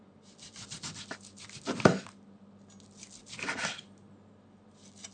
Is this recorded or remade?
recorded